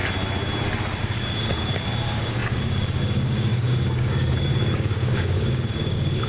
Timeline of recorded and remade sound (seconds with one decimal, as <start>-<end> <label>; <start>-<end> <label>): 0.0-1.0 recorded; 1.0-6.3 remade